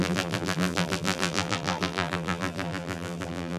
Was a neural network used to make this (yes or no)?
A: yes